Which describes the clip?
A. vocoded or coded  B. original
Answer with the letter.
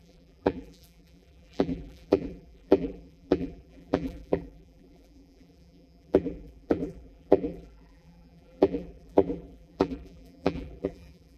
A